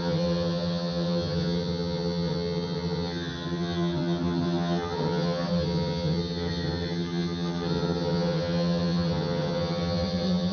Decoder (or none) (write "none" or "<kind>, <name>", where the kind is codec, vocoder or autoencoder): vocoder, HiFi-GAN